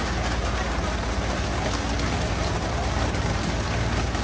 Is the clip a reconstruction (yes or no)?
no